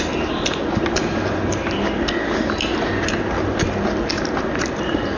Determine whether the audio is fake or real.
real